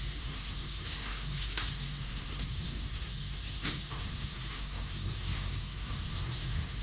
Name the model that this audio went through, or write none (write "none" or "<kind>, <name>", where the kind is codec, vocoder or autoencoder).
codec, SNAC